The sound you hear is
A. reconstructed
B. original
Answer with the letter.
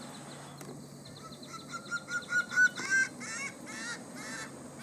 B